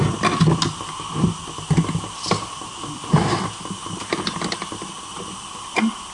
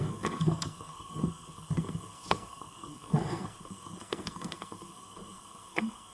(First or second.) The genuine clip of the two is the first